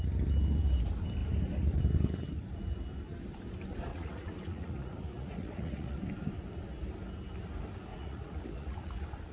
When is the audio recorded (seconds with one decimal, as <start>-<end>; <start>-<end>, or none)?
0.0-3.9; 6.0-7.9; 8.9-9.3